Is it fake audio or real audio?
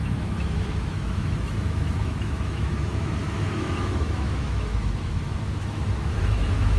fake